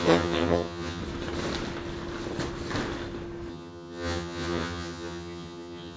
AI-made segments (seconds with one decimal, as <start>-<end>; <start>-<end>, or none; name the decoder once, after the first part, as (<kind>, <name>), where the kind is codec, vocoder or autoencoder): 0.0-1.0 (vocoder, HiFi-GAN); 3.5-6.0